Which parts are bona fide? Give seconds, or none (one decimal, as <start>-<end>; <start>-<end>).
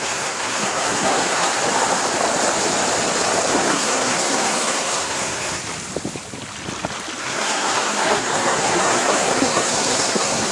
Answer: 1.5-3.5; 5.6-7.2